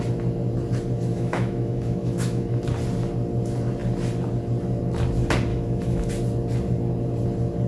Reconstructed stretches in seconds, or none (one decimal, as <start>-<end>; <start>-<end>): 1.1-2.6; 5.5-6.1